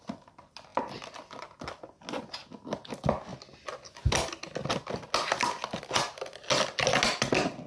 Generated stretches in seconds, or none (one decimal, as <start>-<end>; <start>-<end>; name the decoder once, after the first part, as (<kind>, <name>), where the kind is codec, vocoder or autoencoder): none